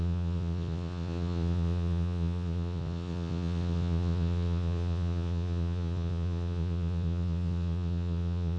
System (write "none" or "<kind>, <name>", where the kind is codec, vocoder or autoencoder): vocoder, Vocos